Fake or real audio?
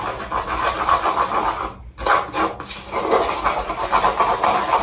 real